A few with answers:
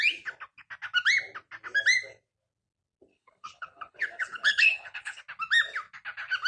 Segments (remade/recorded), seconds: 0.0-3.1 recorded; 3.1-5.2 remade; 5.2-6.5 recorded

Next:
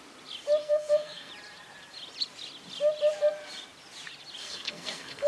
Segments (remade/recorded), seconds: 0.0-0.6 recorded; 0.6-1.3 remade; 1.3-4.4 recorded; 4.4-5.3 remade